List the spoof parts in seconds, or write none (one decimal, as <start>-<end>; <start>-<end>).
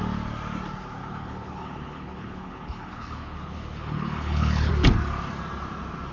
1.0-4.7